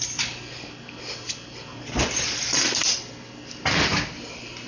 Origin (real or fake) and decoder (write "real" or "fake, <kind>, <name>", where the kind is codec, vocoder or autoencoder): real